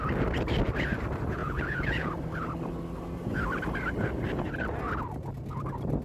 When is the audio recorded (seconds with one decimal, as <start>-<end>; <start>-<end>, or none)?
0.0-1.4; 2.1-6.0